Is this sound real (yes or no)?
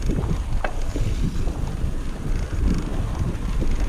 yes